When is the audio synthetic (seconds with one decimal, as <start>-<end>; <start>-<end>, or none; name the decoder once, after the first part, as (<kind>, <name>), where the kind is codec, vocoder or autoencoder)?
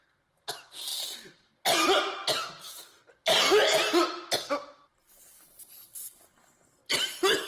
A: none